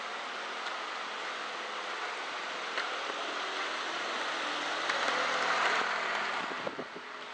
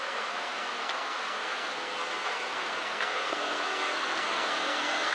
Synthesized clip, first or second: second